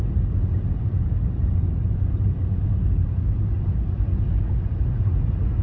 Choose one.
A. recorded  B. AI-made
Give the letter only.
A